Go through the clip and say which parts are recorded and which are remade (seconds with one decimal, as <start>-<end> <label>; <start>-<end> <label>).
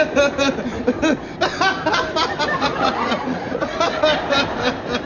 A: 0.0-2.6 recorded; 2.6-4.0 remade; 4.0-5.1 recorded